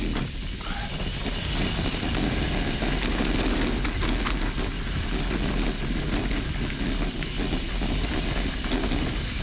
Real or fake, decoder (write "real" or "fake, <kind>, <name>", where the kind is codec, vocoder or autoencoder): real